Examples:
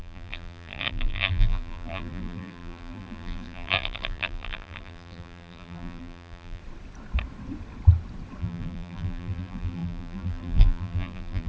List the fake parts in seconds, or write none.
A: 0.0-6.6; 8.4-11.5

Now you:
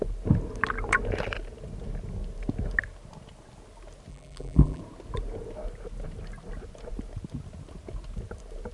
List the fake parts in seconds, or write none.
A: 4.1-4.8

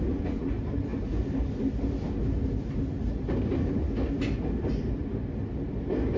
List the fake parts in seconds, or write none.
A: none

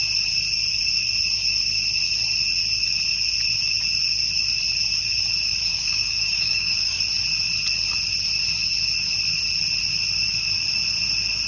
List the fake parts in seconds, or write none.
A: 5.7-7.0

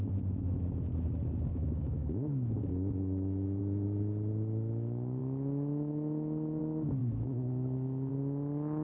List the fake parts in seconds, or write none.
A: 1.5-3.6; 5.2-6.6; 7.0-8.1

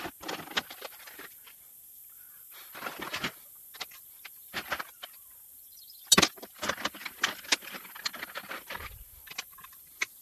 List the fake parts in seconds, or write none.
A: none